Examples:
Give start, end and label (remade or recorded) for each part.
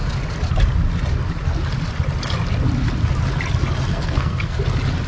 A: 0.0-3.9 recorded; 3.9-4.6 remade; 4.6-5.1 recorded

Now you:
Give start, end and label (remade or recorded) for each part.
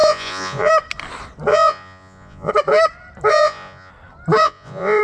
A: 0.0-0.7 remade; 0.7-1.5 recorded; 1.5-2.5 remade; 2.5-3.3 recorded; 3.3-3.9 remade; 3.9-4.4 recorded; 4.4-5.0 remade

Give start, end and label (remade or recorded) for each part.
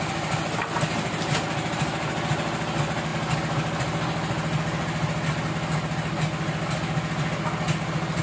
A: 0.0-8.2 recorded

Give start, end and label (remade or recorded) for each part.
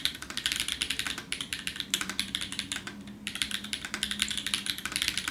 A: 0.0-5.3 recorded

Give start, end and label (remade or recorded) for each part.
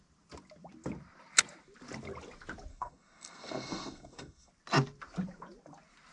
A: 0.0-2.7 recorded; 2.7-4.5 remade; 4.5-6.1 recorded